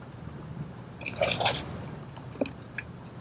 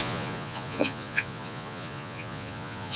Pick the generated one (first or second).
second